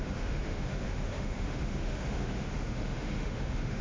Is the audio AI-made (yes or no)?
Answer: yes